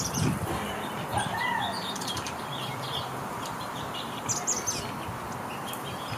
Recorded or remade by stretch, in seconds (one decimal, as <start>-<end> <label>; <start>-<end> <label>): 0.0-1.1 recorded; 1.1-4.3 remade; 4.3-6.2 recorded